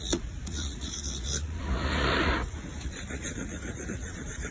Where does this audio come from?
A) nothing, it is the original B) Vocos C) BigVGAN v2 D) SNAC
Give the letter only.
B